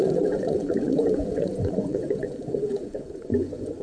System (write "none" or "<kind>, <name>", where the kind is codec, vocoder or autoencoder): vocoder, Vocos